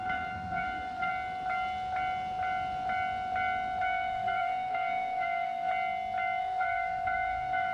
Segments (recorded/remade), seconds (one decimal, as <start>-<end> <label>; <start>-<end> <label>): 0.0-1.1 remade; 1.1-3.8 recorded; 3.8-5.7 remade; 5.7-6.4 recorded; 6.4-7.7 remade